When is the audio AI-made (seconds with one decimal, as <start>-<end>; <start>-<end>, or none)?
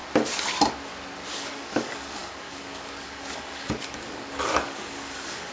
1.3-5.5